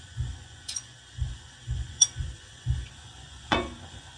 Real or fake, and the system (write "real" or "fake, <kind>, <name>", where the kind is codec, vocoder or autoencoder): fake, vocoder, Vocos